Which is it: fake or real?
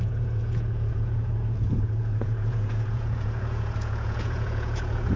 fake